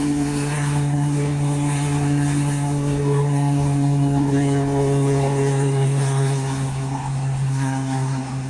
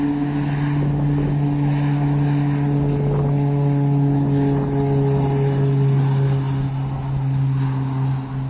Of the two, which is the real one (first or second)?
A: second